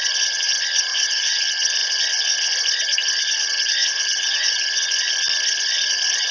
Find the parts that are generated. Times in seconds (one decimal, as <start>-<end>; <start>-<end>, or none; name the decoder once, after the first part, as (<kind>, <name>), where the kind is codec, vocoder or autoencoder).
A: 0.9-1.4 (vocoder, Vocos); 3.8-4.6